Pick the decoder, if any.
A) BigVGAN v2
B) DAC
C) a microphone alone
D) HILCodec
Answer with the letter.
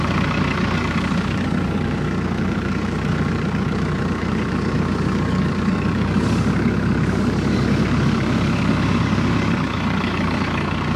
B